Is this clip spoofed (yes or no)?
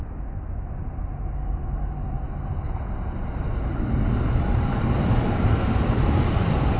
no